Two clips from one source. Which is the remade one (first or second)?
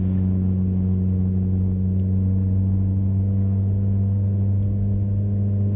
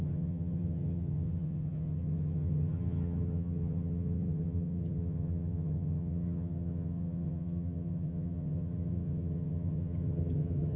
second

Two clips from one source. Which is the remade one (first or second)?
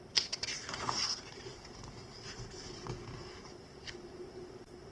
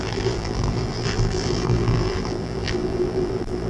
second